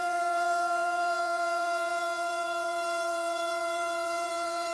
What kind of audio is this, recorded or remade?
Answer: remade